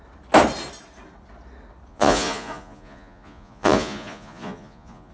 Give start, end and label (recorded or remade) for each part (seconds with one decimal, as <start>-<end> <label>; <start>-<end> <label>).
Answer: 0.0-1.9 recorded; 1.9-5.1 remade